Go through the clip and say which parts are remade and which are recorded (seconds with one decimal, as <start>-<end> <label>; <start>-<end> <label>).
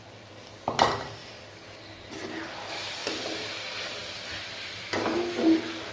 0.0-1.2 recorded; 1.2-1.8 remade; 1.8-3.0 recorded; 3.0-3.5 remade; 3.5-4.0 recorded; 4.0-4.7 remade; 4.7-5.9 recorded